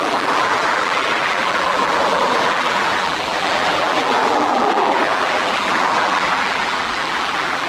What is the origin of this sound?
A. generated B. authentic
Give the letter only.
A